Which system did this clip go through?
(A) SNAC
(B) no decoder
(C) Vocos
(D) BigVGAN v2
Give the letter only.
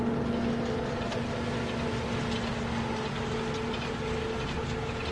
B